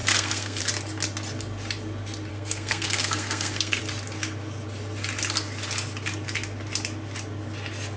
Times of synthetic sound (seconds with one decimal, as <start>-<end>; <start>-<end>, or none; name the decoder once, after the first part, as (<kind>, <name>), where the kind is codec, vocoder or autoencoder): 0.0-0.6 (codec, SNAC); 2.3-3.8